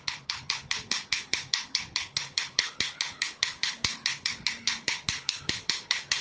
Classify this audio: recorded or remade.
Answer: remade